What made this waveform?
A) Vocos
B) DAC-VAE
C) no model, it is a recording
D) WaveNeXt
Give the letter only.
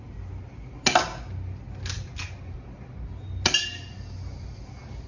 C